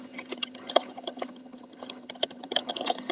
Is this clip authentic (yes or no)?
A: no